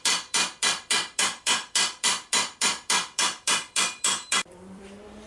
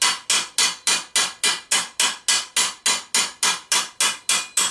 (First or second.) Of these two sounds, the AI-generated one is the first